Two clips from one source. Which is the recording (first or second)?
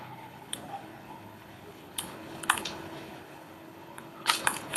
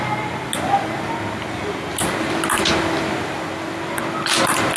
second